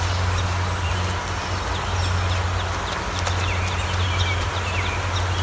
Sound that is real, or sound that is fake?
real